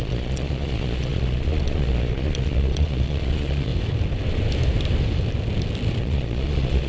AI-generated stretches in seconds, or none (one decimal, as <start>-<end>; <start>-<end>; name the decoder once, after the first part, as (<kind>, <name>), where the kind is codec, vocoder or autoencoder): 0.0-3.7 (vocoder, Vocos); 6.0-6.9